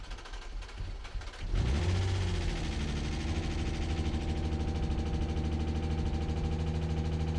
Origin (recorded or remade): recorded